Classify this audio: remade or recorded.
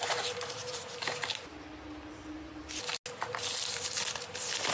recorded